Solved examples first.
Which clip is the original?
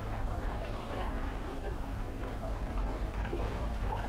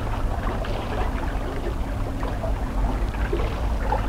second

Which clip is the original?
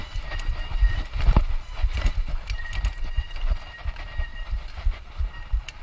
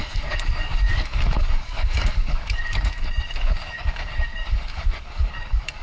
first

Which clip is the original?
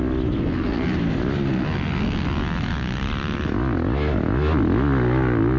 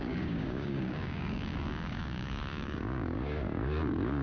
first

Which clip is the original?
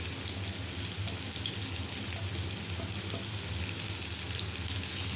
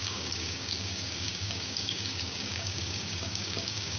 first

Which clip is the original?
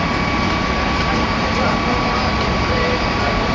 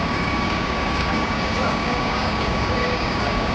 first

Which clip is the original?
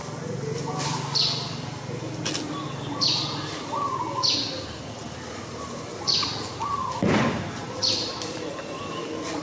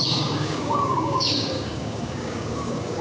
first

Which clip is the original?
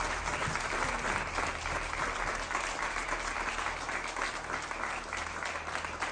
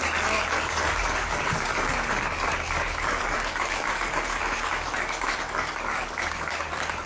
first